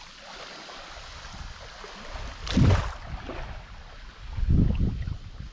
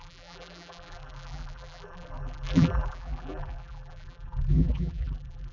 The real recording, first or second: first